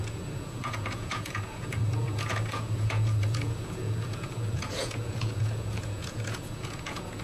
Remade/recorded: remade